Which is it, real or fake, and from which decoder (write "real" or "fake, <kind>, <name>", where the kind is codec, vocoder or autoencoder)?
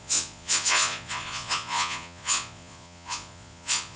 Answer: fake, vocoder, Vocos